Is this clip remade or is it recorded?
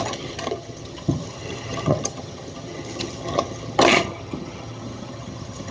remade